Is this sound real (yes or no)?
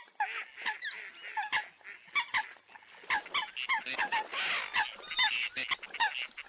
yes